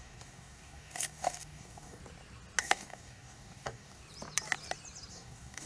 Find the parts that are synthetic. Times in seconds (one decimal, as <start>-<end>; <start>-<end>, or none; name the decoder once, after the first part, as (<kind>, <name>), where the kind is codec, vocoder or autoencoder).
0.0-2.0 (codec, DAC); 2.6-4.0; 5.1-5.7